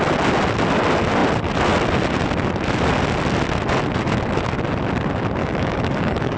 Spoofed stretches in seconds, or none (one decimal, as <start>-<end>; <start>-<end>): 5.4-6.4